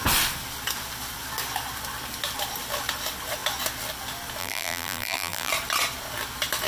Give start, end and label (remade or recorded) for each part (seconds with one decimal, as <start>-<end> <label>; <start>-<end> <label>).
0.0-4.4 recorded; 4.4-5.5 remade; 5.5-6.7 recorded